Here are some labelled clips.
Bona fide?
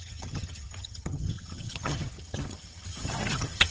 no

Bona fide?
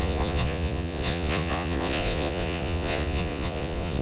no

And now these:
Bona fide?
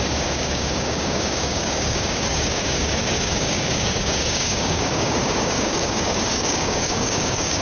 no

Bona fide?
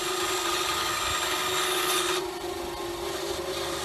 yes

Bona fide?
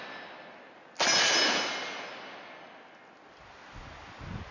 yes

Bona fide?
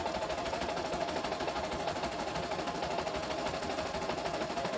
yes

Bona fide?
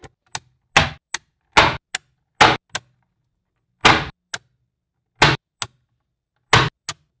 yes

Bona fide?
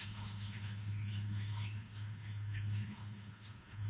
no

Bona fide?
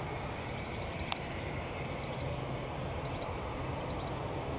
yes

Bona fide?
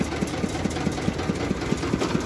yes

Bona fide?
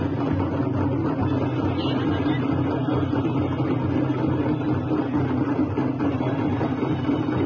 yes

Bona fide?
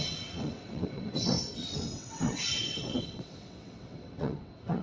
no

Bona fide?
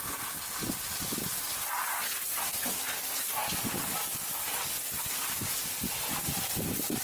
yes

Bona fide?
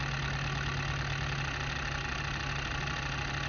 yes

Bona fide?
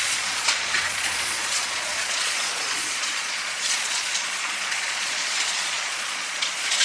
no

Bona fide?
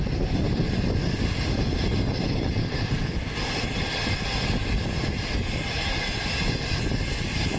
yes